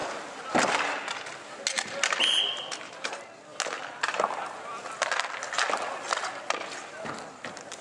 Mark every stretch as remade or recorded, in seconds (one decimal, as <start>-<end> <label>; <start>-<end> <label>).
0.0-7.8 recorded